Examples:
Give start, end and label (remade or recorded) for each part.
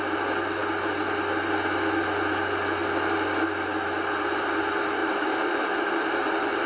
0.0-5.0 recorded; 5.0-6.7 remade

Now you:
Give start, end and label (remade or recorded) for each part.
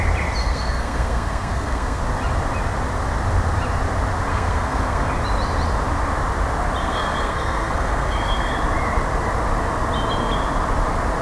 0.0-0.4 recorded; 0.4-2.0 remade; 2.0-4.3 recorded; 4.3-5.1 remade; 5.1-6.8 recorded; 6.8-8.5 remade; 8.5-11.2 recorded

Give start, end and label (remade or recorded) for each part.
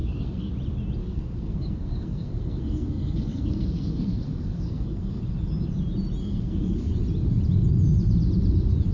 0.0-0.5 remade; 0.5-1.0 recorded; 1.0-5.2 remade; 5.2-6.2 recorded; 6.2-6.9 remade; 6.9-8.9 recorded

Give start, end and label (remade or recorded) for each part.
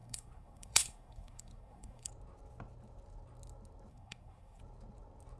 0.0-2.1 remade; 2.1-3.9 recorded; 3.9-4.6 remade; 4.6-5.4 recorded